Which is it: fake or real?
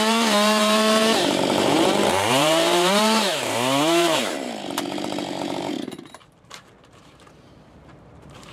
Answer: fake